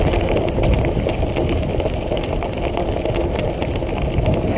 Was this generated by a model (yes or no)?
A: no